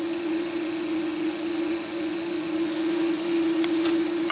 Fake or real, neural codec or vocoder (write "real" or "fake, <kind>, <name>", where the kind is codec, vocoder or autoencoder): fake, vocoder, Vocos